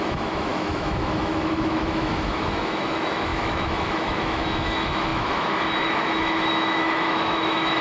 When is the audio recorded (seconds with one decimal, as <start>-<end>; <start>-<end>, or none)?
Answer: none